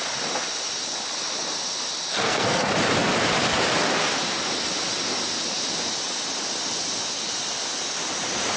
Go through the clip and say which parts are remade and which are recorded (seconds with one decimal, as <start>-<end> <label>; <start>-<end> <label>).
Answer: 0.0-2.1 recorded; 2.1-2.7 remade; 2.7-8.6 recorded